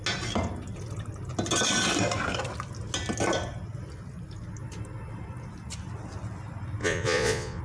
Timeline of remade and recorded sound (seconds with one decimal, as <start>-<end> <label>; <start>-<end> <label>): 0.0-6.8 recorded; 6.8-7.6 remade